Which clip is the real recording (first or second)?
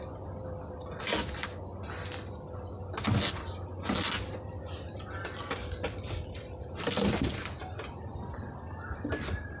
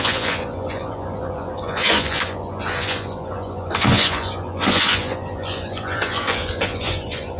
first